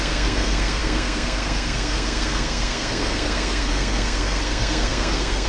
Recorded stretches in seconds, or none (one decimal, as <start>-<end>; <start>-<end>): none